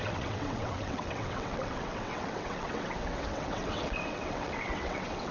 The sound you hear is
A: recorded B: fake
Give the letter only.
B